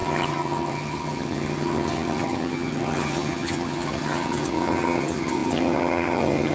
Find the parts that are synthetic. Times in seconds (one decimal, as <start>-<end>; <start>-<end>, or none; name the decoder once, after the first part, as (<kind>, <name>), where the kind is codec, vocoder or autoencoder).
0.0-6.5 (vocoder, HiFi-GAN)